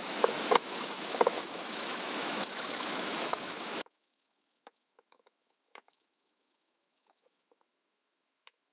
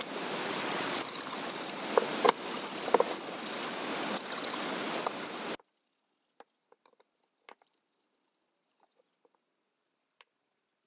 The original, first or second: second